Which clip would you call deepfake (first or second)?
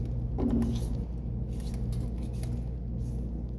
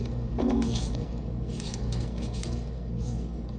second